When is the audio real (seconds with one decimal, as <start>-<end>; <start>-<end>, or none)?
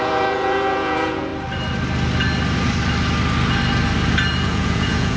1.3-4.4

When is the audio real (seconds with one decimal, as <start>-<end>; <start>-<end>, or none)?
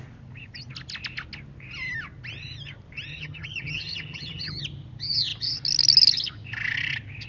0.0-3.1; 4.6-7.3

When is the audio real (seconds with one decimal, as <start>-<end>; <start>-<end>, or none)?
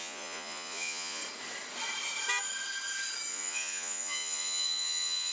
1.2-3.3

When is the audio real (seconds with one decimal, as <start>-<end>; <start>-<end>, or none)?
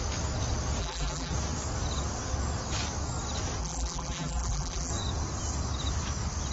0.0-0.8; 1.3-3.6; 4.9-6.5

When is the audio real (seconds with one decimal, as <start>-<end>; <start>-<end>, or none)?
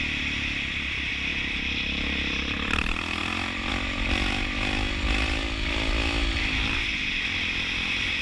none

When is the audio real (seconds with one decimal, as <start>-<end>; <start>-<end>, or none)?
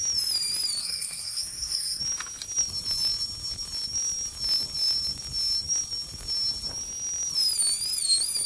0.0-0.8; 2.0-8.5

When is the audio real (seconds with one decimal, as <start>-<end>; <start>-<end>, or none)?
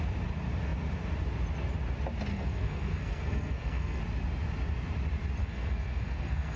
0.0-2.3; 4.0-5.4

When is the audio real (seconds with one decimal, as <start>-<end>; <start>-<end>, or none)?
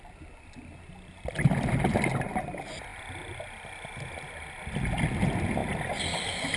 0.0-6.6